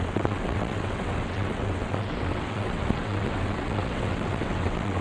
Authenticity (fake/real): fake